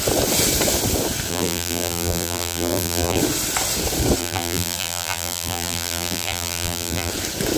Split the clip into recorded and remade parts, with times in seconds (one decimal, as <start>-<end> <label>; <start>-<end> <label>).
0.0-1.3 recorded; 1.3-3.2 remade; 3.2-4.2 recorded; 4.2-7.1 remade; 7.1-7.6 recorded